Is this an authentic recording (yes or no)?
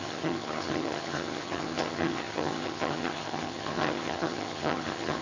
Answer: no